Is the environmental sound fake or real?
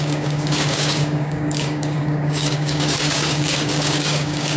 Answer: fake